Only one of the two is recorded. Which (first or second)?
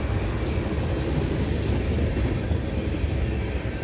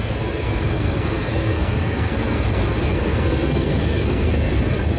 first